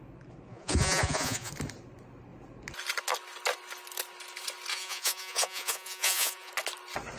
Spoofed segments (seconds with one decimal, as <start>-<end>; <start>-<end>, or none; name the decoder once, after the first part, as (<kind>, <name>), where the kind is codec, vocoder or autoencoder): 0.5-1.5 (vocoder, Vocos); 4.7-6.5

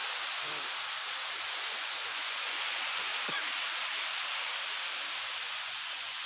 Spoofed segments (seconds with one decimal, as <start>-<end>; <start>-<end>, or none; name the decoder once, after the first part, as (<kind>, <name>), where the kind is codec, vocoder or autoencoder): 1.4-3.1 (vocoder, Vocos); 5.4-6.3

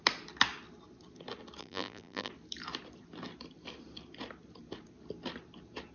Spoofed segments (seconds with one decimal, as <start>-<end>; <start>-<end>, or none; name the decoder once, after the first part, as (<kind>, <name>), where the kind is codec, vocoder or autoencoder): 1.6-2.3 (vocoder, BigVGAN v2)

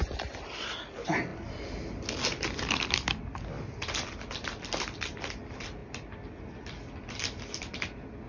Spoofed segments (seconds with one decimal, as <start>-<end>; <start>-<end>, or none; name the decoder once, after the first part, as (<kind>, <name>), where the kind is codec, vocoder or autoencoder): none

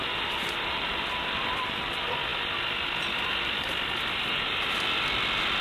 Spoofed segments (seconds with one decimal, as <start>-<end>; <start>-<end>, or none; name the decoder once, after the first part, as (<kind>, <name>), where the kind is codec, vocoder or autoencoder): none

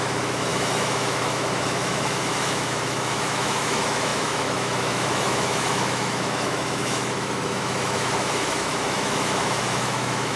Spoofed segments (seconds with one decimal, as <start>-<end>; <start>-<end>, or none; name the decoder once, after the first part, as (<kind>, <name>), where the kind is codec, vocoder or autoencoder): 0.0-10.4 (autoencoder, DAC-VAE)

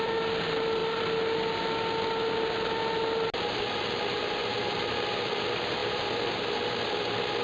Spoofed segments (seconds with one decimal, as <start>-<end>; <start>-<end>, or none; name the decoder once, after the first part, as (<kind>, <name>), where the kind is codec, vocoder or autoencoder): 0.0-0.8 (vocoder, BigVGAN v2); 5.2-7.4

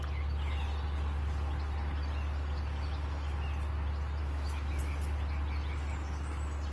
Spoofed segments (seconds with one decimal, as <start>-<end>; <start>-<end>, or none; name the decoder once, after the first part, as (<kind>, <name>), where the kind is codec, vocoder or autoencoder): 4.2-4.8 (autoencoder, DAC-VAE)